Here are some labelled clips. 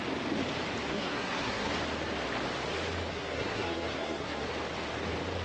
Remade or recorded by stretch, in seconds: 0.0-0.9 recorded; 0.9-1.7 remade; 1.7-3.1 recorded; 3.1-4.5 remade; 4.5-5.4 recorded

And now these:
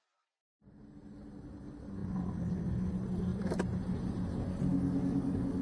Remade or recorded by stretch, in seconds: 0.0-4.7 recorded; 4.7-5.6 remade

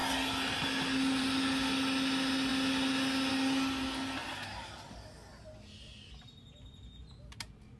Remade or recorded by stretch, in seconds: 0.0-7.8 recorded